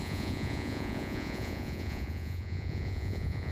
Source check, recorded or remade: remade